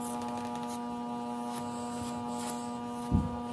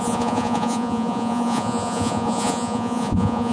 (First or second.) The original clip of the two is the first